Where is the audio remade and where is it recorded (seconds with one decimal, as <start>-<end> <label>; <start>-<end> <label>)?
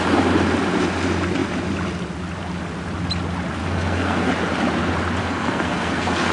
0.0-3.6 recorded; 3.6-4.3 remade; 4.3-5.2 recorded; 5.2-6.3 remade